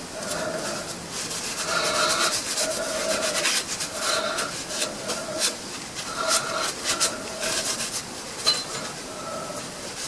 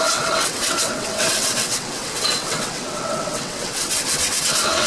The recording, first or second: first